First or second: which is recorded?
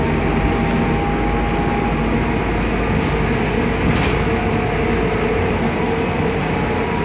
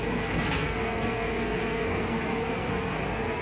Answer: first